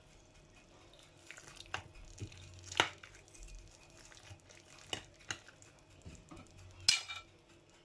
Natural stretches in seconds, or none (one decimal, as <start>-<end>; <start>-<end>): 0.0-7.8